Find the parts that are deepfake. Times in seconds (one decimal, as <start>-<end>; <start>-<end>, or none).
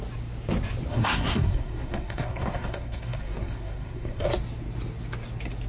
0.9-4.3